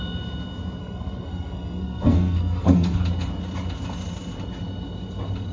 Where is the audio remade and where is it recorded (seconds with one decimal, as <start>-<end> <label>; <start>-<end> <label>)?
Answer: 0.0-0.8 recorded; 0.8-3.0 remade; 3.0-5.5 recorded